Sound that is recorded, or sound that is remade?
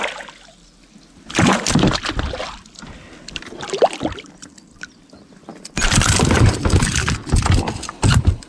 recorded